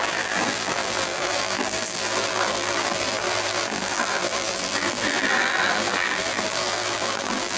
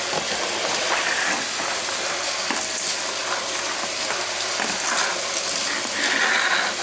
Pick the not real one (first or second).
first